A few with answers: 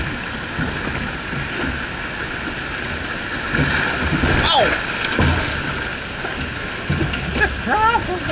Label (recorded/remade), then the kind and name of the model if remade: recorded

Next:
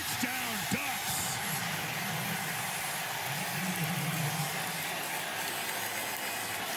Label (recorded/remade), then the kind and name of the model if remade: recorded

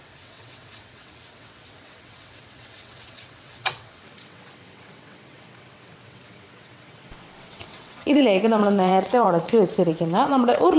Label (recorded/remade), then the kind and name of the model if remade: remade, vocoder, WaveNeXt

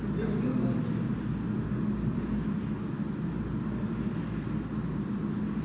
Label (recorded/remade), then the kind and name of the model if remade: recorded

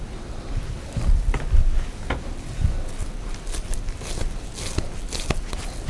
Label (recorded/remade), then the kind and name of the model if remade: recorded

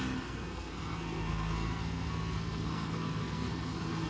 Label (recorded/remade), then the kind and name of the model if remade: remade, codec, SNAC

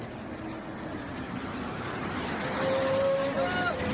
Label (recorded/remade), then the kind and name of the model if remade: recorded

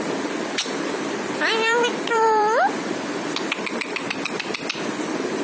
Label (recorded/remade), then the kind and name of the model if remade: remade, vocoder, BigVGAN v2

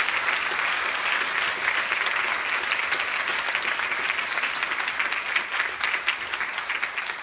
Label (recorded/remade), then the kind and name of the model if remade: recorded